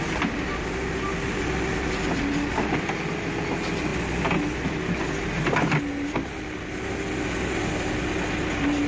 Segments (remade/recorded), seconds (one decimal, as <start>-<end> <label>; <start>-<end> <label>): 0.0-8.9 recorded